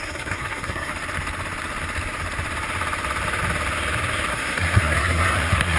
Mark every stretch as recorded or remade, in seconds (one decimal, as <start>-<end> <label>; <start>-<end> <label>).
0.0-0.9 remade; 0.9-4.3 recorded; 4.3-5.8 remade